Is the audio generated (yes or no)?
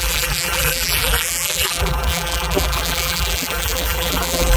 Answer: yes